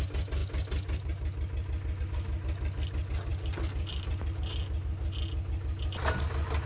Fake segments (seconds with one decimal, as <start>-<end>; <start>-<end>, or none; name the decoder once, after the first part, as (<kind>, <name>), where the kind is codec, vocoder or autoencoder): none